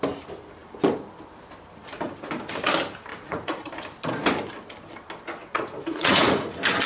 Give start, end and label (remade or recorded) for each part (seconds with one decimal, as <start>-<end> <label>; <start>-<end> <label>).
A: 0.0-3.1 recorded; 3.1-3.7 remade; 3.7-5.4 recorded; 5.4-6.5 remade; 6.5-6.9 recorded